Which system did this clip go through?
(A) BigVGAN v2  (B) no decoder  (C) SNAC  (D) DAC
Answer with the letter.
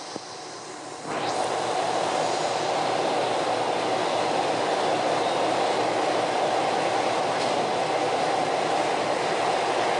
B